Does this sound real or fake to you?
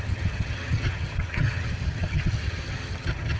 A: fake